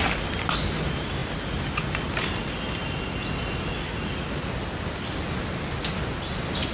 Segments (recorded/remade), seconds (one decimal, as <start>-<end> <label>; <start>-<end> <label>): 0.0-6.7 recorded